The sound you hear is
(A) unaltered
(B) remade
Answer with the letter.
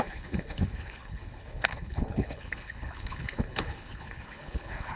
B